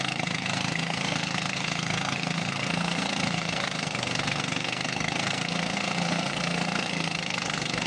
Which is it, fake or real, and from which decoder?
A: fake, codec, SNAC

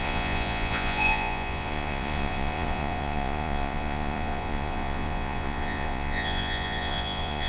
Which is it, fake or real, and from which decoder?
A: fake, vocoder, Vocos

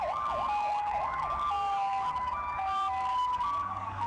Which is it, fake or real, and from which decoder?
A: fake, codec, DAC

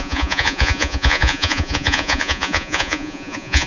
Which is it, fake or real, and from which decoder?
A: fake, vocoder, Vocos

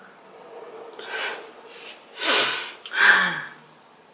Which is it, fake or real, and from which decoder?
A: real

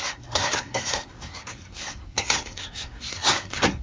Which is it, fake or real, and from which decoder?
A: fake, codec, SNAC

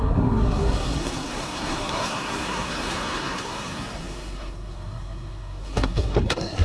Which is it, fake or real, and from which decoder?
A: fake, codec, SNAC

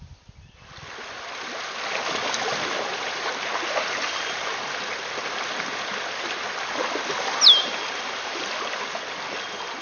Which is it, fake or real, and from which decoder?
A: real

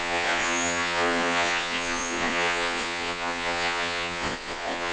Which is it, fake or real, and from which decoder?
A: fake, vocoder, Vocos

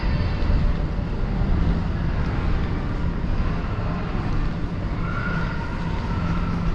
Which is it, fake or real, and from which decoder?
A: real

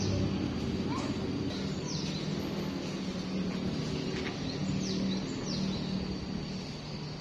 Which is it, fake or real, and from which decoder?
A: real